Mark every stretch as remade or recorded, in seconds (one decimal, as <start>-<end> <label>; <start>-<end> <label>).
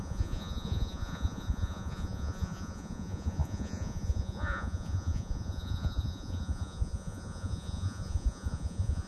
0.0-9.1 remade